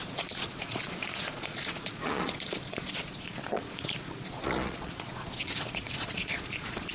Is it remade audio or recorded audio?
remade